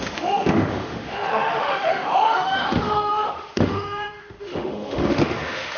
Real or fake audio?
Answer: fake